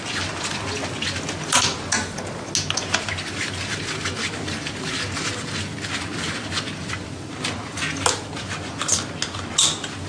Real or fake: real